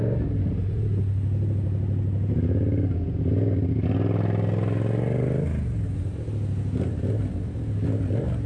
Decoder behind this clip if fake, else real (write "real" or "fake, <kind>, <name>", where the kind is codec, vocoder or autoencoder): real